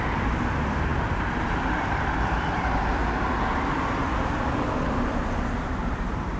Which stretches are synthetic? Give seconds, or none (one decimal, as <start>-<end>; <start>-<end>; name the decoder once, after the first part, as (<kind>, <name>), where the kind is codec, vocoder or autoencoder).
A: 0.0-6.4 (vocoder, BigVGAN v2)